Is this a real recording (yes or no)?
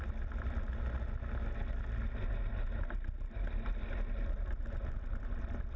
yes